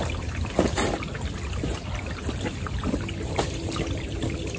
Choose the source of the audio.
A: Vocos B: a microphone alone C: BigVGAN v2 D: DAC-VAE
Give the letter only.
B